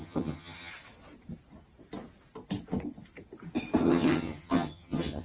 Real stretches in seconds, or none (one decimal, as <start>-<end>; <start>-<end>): 0.7-3.8